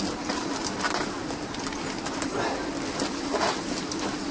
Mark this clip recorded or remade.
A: recorded